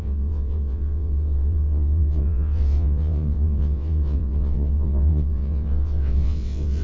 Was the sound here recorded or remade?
remade